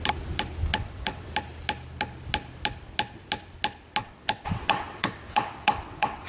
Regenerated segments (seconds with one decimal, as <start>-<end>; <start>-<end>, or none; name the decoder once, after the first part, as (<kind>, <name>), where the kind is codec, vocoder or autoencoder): 0.7-1.3 (vocoder, WaveNeXt); 4.0-6.3